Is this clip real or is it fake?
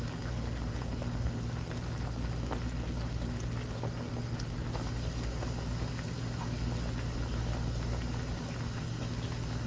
real